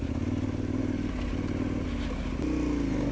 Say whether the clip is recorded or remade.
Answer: recorded